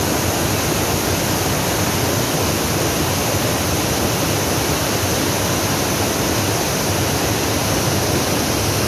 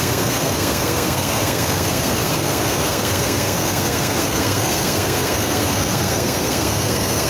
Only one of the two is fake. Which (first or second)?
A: second